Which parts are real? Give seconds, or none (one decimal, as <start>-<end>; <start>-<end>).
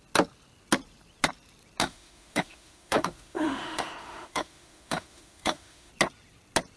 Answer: 0.0-1.8; 5.9-6.8